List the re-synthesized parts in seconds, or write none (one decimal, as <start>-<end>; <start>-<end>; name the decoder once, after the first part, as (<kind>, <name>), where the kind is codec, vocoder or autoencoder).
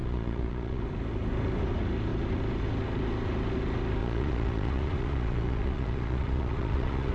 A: 0.0-0.8 (vocoder, Vocos); 4.0-7.1